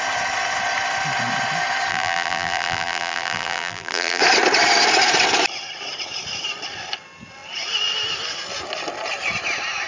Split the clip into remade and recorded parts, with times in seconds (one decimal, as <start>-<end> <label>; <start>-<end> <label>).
0.0-1.9 recorded; 1.9-4.2 remade; 4.2-9.9 recorded